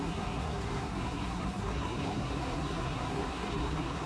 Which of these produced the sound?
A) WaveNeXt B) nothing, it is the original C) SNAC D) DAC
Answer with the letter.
C